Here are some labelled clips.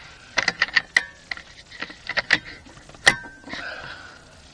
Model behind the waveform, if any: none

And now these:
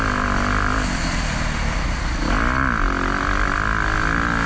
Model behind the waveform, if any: none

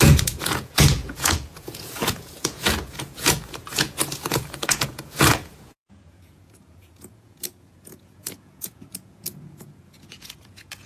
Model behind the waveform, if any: vocoder, Vocos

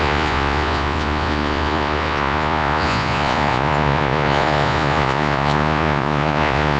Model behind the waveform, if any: vocoder, Vocos